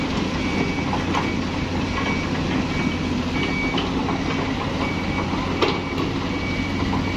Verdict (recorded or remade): recorded